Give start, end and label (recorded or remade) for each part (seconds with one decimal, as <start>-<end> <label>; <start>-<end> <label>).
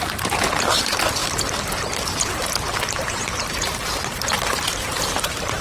0.0-5.6 remade